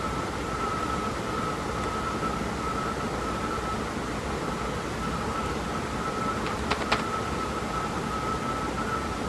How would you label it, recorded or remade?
recorded